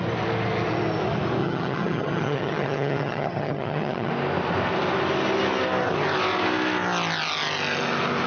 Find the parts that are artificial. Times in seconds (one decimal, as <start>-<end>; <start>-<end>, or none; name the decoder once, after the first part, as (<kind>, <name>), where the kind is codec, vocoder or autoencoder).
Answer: 1.4-4.1 (vocoder, HiFi-GAN)